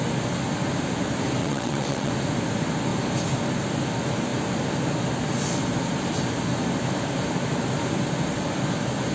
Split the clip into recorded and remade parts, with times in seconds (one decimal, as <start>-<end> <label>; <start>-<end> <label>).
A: 0.0-1.4 recorded; 1.4-2.1 remade; 2.1-9.1 recorded